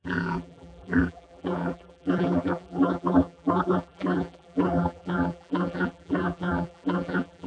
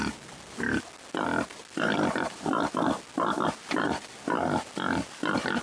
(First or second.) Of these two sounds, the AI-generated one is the first